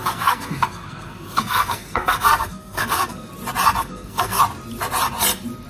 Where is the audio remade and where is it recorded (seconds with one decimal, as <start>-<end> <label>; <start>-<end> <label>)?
0.0-3.3 remade; 3.3-3.8 recorded; 3.8-4.4 remade; 4.4-5.7 recorded